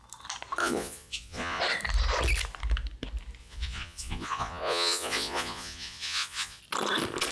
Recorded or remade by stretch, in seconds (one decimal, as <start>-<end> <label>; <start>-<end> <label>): 0.0-0.6 recorded; 0.6-1.6 remade; 1.6-3.4 recorded; 3.4-6.6 remade; 6.6-7.3 recorded